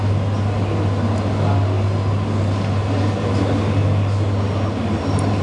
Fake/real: real